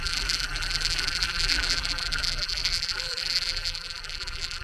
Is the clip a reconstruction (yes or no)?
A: yes